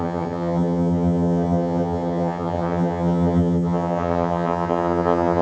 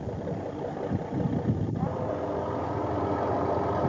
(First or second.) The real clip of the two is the second